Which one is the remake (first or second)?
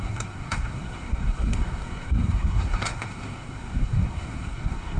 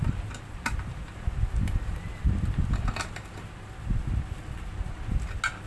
first